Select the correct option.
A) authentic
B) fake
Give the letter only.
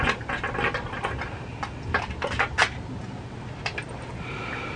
A